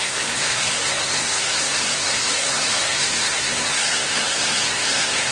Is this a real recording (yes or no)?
no